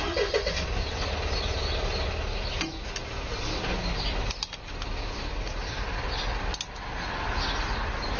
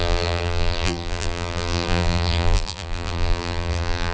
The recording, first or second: first